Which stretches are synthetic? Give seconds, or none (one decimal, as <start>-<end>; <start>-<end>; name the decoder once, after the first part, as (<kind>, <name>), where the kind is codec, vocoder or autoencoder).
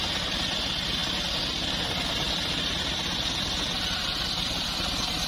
none